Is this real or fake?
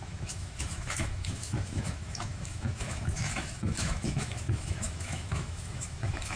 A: fake